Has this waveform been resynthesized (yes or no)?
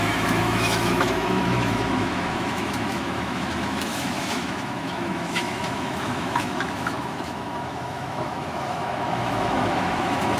yes